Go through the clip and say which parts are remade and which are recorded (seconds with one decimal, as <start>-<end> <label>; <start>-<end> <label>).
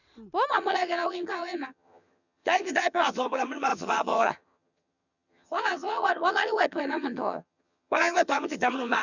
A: 0.0-0.5 recorded; 0.5-9.0 remade